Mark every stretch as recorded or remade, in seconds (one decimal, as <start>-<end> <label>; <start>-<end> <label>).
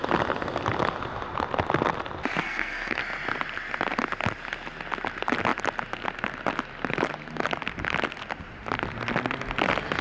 0.0-2.4 recorded; 2.4-3.0 remade; 3.0-10.0 recorded